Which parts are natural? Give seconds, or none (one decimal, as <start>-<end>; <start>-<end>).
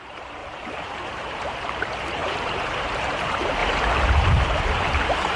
3.6-4.1